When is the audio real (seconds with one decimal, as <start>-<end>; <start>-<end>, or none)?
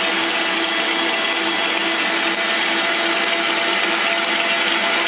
0.0-5.1